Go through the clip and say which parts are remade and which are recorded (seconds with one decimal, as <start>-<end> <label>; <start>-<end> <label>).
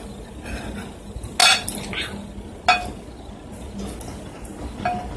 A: 0.0-5.2 recorded